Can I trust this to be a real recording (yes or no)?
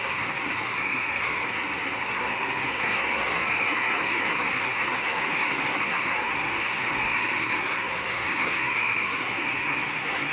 no